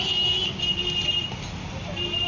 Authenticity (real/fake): real